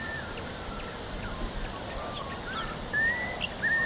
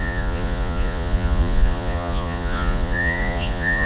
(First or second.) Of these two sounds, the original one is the first